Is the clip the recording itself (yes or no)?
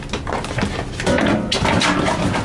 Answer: yes